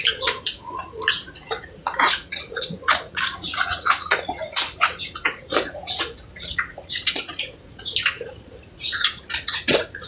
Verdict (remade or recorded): remade